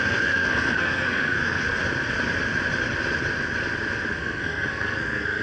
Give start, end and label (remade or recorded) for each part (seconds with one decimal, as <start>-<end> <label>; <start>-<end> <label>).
0.0-1.8 remade; 1.8-4.1 recorded; 4.1-5.4 remade